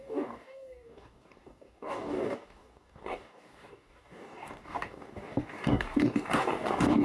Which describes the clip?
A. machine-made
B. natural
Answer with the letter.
A